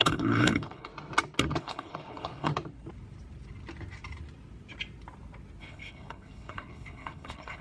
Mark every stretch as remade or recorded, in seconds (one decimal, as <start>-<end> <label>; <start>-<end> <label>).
0.0-0.9 remade; 0.9-1.6 recorded; 1.6-2.5 remade; 2.5-5.6 recorded; 5.6-7.6 remade